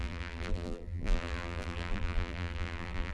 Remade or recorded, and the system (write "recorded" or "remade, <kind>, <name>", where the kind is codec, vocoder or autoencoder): remade, vocoder, BigVGAN v2